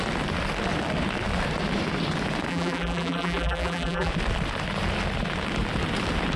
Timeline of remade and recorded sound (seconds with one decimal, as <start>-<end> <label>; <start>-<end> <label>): 0.0-2.5 recorded; 2.5-4.1 remade; 4.1-6.4 recorded